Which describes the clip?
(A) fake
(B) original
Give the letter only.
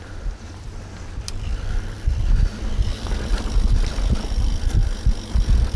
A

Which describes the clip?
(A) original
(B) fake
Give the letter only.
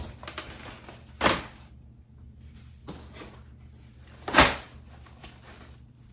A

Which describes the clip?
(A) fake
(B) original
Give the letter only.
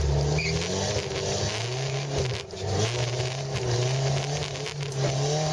B